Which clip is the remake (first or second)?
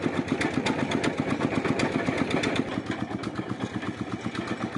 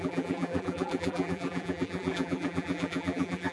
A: second